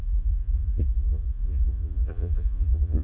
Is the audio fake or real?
fake